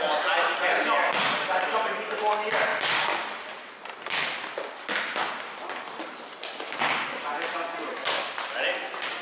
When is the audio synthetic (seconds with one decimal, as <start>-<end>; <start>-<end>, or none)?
none